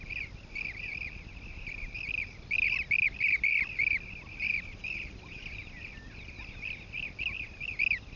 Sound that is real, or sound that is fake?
real